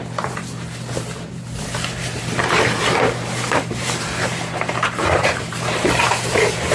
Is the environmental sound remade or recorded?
remade